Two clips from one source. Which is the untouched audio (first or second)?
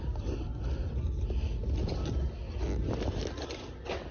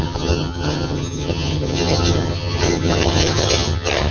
first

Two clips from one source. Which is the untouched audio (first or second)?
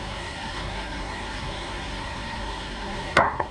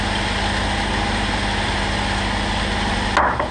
second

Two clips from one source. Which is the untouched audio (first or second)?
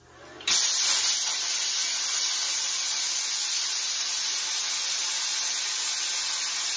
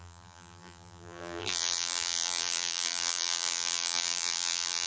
first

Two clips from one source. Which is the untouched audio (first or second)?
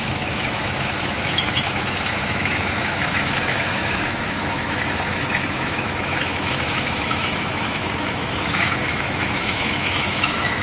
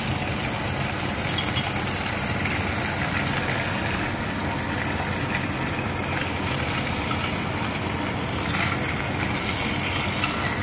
second